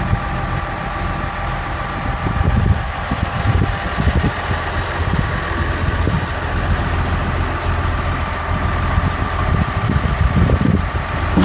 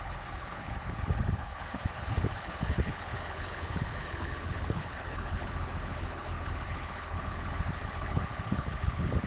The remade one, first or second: second